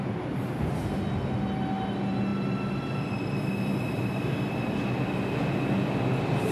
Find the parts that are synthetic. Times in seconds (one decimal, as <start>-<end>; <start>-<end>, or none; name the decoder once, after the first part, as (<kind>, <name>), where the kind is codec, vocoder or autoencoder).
none